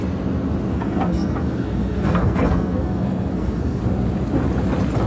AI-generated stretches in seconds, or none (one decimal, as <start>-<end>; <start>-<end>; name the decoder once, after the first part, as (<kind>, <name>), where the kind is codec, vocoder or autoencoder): 0.7-3.8 (codec, SNAC)